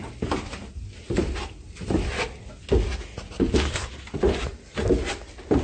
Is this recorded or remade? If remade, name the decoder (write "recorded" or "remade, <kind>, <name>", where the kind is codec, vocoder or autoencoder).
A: recorded